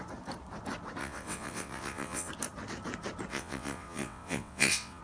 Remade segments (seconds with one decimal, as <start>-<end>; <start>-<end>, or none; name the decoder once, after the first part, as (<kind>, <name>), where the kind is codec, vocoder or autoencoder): 1.0-2.3 (vocoder, WaveNeXt); 3.3-5.0